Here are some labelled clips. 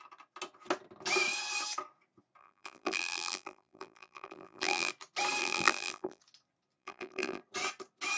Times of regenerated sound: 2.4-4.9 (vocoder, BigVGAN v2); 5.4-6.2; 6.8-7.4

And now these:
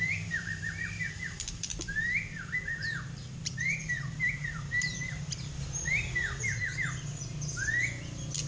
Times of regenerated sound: 0.0-6.2 (vocoder, BigVGAN v2)

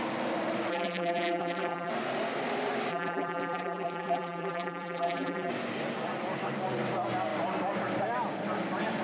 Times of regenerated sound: 0.7-1.9 (vocoder, BigVGAN v2); 2.9-5.5

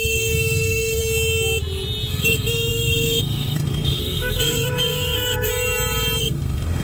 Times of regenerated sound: 0.0-1.0 (codec, SNAC); 2.1-5.5; 6.2-6.8

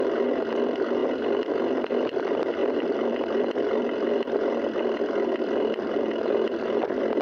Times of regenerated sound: 1.0-1.5 (vocoder, BigVGAN v2); 2.6-6.2

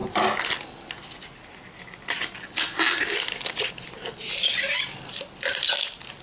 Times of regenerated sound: none